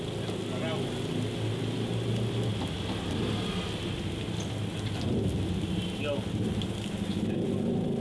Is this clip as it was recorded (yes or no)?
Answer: yes